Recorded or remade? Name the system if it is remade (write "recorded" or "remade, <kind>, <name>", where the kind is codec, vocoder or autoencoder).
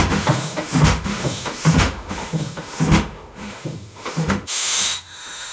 remade, autoencoder, DAC-VAE